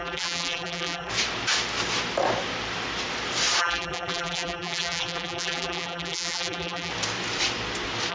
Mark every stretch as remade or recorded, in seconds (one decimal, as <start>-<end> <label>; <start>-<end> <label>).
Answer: 0.0-1.1 remade; 1.1-3.6 recorded; 3.6-6.9 remade; 6.9-8.1 recorded